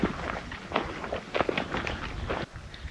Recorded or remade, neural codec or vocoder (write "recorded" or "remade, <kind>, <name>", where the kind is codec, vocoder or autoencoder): recorded